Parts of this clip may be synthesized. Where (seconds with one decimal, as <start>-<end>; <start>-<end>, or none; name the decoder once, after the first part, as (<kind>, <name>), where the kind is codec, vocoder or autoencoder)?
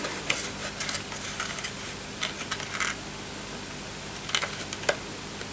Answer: none